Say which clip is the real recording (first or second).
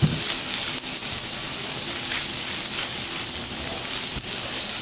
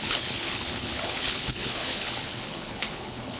first